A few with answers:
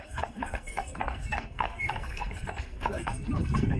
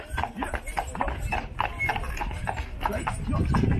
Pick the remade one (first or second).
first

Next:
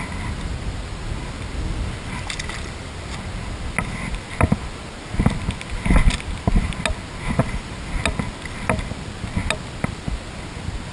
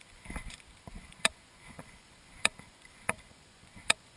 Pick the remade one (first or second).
second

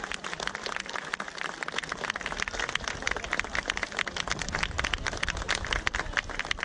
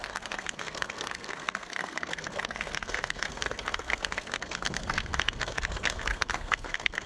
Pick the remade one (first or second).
second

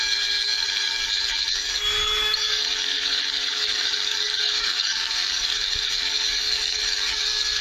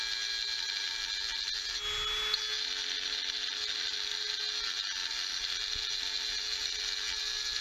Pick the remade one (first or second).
first